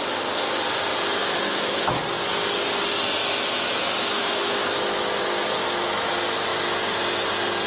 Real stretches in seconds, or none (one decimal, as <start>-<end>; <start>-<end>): 0.0-1.2; 2.0-3.2; 6.1-7.7